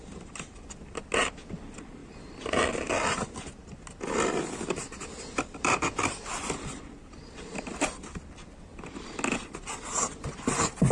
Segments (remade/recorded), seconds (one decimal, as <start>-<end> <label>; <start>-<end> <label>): 0.0-2.0 remade; 2.0-5.1 recorded; 5.1-10.9 remade